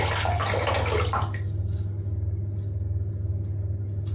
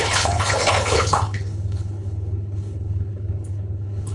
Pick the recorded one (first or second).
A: first